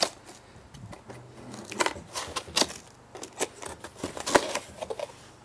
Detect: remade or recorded recorded